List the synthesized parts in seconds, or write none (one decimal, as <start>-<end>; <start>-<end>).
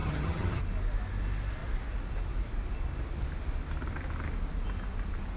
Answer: 0.0-0.6